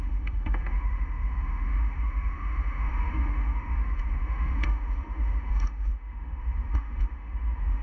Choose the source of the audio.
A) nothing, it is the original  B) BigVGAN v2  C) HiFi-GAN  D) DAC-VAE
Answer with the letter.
D